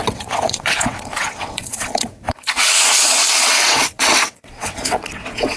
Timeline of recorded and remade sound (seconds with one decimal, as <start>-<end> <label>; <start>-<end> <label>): 0.0-5.6 remade